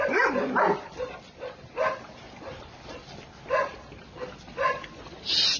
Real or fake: real